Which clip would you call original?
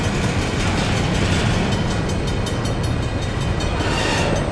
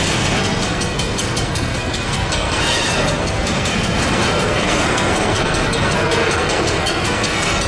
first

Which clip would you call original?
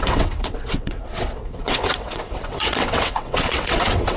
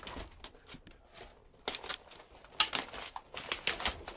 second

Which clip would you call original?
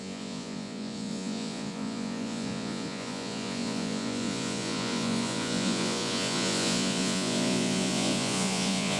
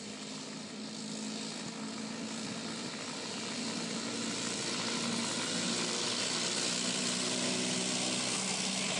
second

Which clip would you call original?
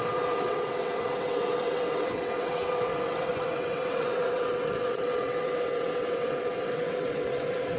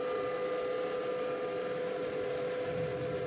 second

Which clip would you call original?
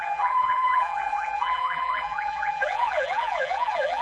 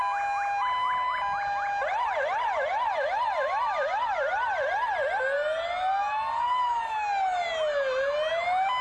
second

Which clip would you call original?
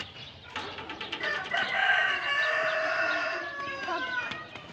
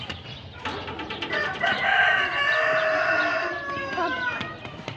second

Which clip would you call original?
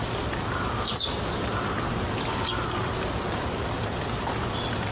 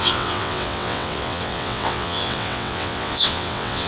first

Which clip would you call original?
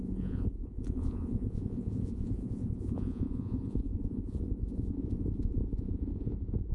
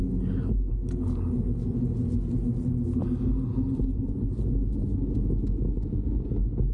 second